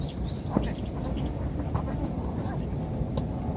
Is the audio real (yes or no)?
yes